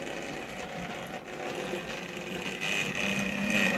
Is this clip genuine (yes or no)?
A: yes